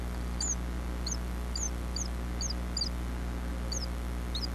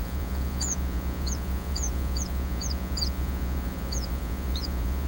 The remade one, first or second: second